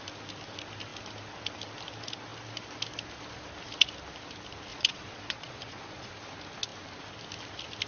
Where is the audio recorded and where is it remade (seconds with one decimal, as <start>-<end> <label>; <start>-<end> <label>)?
0.0-4.7 recorded; 4.7-6.1 remade; 6.1-7.9 recorded